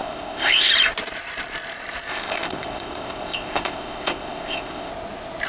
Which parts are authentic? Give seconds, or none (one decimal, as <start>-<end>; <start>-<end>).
0.7-2.1; 4.9-5.5